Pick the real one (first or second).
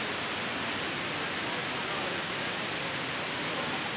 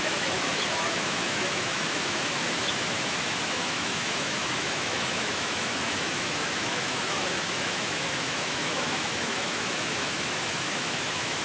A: first